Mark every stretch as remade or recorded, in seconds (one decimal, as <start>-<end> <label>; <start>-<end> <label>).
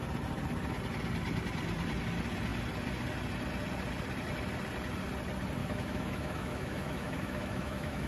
0.0-5.6 recorded; 5.6-8.1 remade